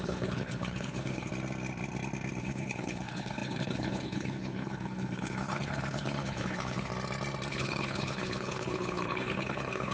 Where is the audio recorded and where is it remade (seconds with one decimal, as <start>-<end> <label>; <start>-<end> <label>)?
0.0-1.3 remade; 1.3-2.4 recorded; 2.4-6.9 remade; 6.9-7.5 recorded; 7.5-9.9 remade